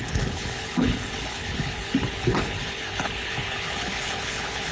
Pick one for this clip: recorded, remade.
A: remade